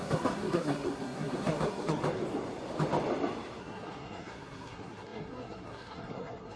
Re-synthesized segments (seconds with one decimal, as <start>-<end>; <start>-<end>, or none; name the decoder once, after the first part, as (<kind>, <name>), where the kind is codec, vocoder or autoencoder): 0.0-2.0 (codec, SNAC); 3.6-6.6